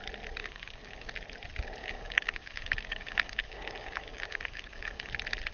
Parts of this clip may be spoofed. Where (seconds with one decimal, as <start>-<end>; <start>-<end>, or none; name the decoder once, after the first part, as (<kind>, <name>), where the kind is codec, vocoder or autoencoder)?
0.4-1.1 (codec, DAC); 1.8-5.1